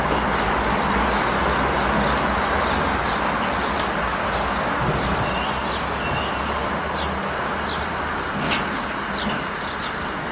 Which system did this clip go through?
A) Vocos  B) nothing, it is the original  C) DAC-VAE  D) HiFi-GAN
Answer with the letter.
B